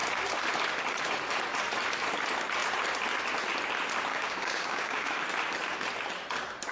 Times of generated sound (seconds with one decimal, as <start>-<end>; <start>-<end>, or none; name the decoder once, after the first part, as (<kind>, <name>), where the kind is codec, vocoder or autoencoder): 4.1-5.3 (codec, DAC)